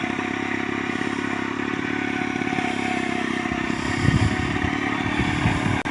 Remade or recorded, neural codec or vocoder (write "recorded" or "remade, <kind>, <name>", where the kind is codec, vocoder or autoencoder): recorded